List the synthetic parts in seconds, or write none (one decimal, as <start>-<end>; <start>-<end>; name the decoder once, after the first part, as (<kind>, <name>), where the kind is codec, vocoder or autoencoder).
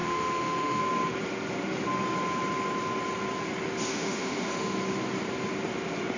0.0-0.8 (autoencoder, DAC-VAE); 3.9-4.5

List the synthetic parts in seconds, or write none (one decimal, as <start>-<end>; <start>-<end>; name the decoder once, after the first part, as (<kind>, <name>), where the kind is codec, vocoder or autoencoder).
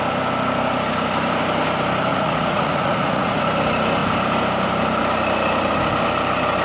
2.1-3.4 (vocoder, Vocos)